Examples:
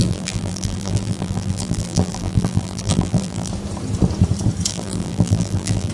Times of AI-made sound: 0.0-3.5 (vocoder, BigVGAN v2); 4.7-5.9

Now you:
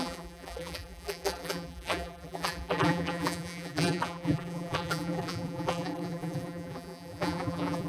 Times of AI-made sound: 0.0-7.9 (vocoder, BigVGAN v2)